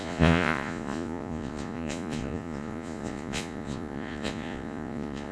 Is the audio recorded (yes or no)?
no